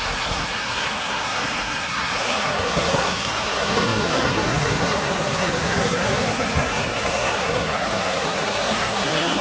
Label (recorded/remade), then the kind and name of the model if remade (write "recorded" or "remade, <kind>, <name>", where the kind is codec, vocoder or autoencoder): remade, codec, SNAC